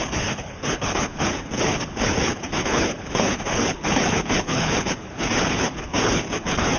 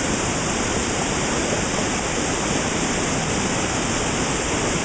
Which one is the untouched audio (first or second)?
second